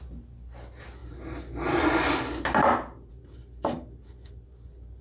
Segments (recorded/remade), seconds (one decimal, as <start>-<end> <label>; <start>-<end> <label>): 0.0-5.0 recorded

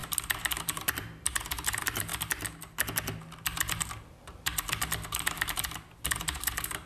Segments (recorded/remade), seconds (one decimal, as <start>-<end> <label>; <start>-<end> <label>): 0.0-2.1 remade; 2.1-5.2 recorded; 5.2-6.9 remade

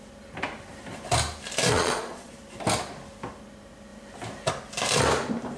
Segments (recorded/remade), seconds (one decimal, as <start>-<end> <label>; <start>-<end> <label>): 0.0-1.7 recorded; 1.7-2.3 remade; 2.3-5.6 recorded